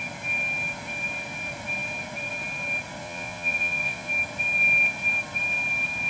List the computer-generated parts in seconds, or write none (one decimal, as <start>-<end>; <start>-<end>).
3.0-4.1